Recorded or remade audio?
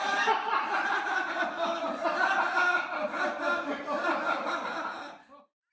recorded